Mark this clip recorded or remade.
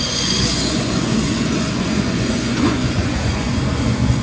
remade